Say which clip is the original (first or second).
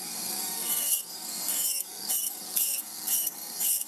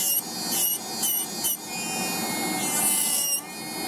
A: second